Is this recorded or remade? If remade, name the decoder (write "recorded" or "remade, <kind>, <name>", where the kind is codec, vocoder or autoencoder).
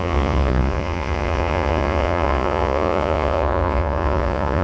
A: remade, vocoder, Vocos